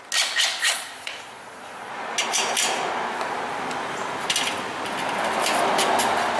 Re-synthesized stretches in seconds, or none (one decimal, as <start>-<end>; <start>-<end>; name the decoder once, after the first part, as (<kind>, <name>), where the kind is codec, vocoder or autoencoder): 0.6-1.9 (vocoder, Vocos)